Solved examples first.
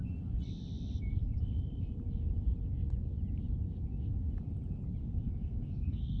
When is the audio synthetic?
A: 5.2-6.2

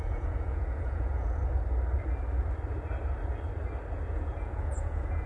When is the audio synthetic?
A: 0.0-1.4; 4.1-5.3

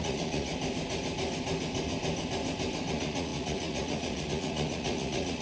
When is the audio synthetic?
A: 0.0-0.5; 2.9-5.4

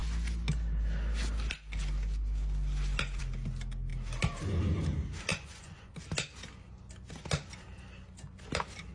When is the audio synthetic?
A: 5.3-5.9